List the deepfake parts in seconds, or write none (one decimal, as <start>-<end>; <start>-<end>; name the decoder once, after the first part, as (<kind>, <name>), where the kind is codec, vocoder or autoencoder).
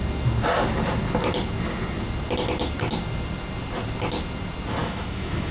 4.8-5.5 (autoencoder, DAC-VAE)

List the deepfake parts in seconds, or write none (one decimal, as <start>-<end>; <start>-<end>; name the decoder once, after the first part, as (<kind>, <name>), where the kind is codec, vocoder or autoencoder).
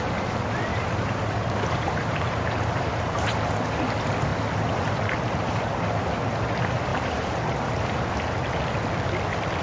0.7-3.3 (vocoder, BigVGAN v2); 6.9-7.6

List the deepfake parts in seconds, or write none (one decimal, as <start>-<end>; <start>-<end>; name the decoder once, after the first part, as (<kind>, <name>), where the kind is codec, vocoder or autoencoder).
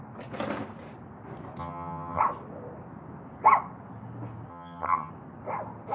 1.6-2.2 (vocoder, HiFi-GAN); 4.5-5.1